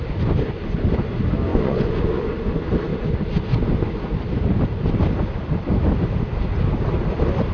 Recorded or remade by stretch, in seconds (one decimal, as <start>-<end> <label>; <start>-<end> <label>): 0.0-1.5 recorded; 1.5-2.2 remade; 2.2-7.5 recorded

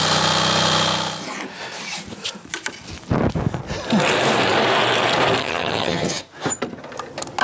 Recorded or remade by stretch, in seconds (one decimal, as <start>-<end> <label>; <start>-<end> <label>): 0.0-5.4 recorded; 5.4-6.2 remade; 6.2-7.4 recorded

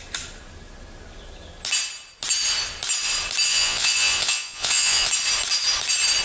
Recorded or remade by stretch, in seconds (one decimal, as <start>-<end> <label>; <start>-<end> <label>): 0.0-3.5 recorded; 3.5-5.1 remade; 5.1-6.2 recorded

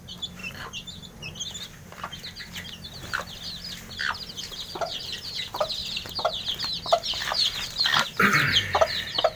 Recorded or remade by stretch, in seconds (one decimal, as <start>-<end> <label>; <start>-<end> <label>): 0.0-0.4 recorded; 0.4-1.4 remade; 1.4-9.4 recorded

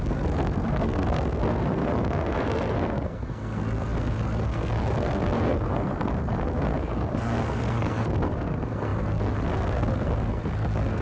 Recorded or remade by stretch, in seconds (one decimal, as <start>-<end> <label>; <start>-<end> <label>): 0.0-11.0 remade

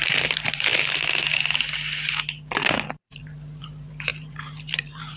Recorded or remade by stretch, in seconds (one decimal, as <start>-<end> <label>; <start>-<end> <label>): 0.0-0.7 remade; 0.7-3.0 recorded; 3.0-5.2 remade

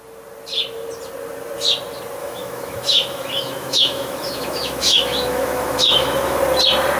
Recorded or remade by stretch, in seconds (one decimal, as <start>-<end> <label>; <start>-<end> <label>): 0.0-2.2 recorded; 2.2-6.4 remade; 6.4-7.0 recorded

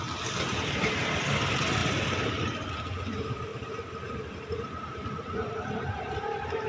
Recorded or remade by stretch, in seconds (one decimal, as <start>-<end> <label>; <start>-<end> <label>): 0.0-6.7 recorded